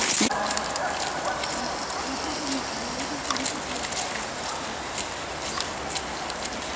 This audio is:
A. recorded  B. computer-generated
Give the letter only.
A